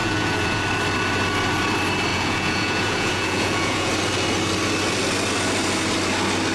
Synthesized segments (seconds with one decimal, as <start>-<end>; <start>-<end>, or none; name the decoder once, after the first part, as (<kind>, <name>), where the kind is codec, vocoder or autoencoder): 0.0-0.6 (vocoder, Vocos); 2.1-3.9